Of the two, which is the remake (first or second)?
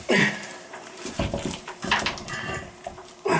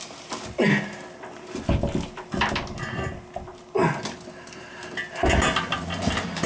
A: first